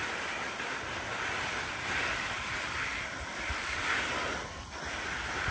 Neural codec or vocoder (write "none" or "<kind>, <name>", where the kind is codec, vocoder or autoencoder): none